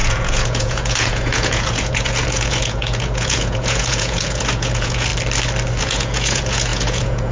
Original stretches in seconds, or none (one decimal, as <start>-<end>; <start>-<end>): 5.1-5.8